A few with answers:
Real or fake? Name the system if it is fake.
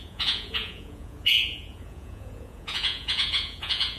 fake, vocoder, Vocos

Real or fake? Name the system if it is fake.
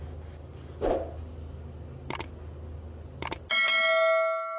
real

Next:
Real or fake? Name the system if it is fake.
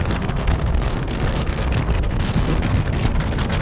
fake, codec, SNAC